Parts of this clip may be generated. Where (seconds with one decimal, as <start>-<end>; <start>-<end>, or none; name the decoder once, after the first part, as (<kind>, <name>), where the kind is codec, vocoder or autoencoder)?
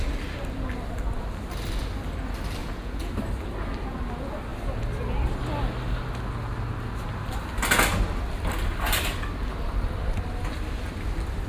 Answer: 2.6-3.1 (vocoder, Vocos)